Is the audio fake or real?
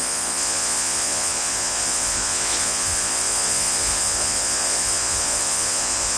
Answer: fake